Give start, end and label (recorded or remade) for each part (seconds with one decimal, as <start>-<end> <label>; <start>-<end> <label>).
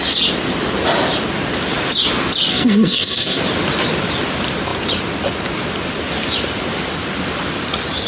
0.0-2.5 recorded; 2.5-3.4 remade; 3.4-8.1 recorded